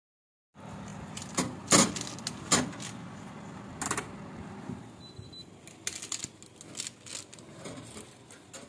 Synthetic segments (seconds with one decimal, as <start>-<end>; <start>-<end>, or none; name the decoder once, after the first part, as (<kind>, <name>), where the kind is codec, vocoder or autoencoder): none